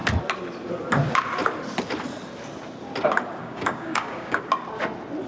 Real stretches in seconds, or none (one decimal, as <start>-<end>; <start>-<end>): 0.0-3.4; 4.4-5.3